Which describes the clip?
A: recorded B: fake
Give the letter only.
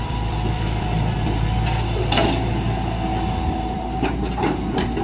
B